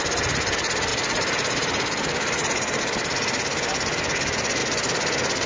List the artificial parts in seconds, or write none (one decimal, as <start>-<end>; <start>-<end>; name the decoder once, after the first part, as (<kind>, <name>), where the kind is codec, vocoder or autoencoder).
0.9-2.8 (vocoder, BigVGAN v2)